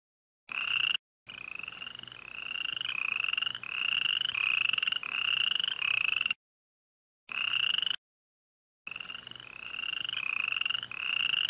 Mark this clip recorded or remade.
recorded